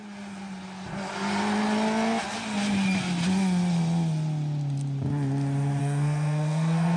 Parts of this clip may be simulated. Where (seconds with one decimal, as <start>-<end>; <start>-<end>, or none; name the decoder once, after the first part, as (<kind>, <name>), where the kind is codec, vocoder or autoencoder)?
5.8-7.0 (codec, SNAC)